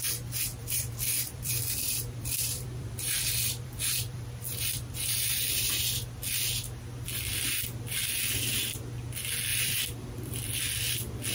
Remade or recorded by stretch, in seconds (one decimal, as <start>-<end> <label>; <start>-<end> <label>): 0.0-0.5 recorded; 0.5-5.7 remade; 5.7-9.5 recorded; 9.5-10.6 remade; 10.6-11.3 recorded